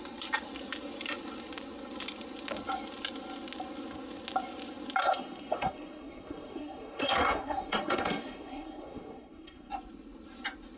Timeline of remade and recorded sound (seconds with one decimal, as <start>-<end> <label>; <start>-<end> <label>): 0.0-5.0 recorded; 5.0-9.7 remade; 9.7-10.8 recorded